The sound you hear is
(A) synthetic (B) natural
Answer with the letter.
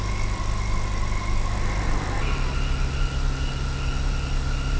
A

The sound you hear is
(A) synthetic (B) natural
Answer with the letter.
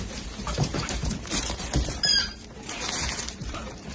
A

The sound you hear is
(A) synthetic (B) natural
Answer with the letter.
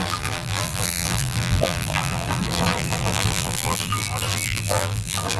A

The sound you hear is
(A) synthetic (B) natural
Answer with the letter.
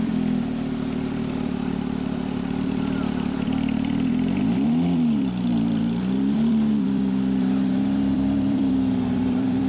A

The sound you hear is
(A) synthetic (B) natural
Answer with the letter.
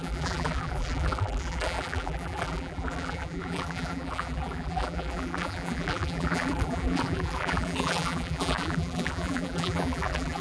A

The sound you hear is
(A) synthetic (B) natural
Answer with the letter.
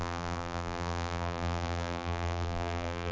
A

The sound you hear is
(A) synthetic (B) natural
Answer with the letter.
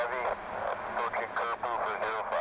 B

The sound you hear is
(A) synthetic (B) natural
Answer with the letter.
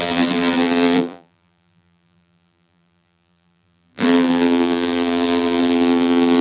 A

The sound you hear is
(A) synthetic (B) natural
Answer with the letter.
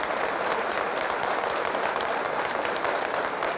A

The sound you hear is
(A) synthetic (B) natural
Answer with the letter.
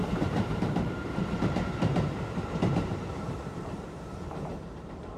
A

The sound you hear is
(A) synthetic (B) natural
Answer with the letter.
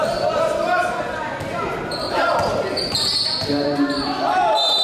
B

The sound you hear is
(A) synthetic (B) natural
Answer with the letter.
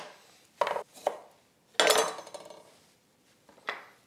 B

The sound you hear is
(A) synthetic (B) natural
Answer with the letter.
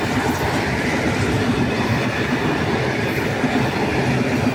B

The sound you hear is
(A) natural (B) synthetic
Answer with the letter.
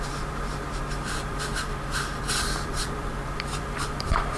B